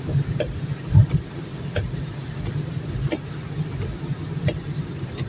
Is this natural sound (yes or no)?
yes